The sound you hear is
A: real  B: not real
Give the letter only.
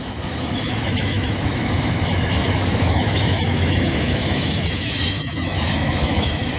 B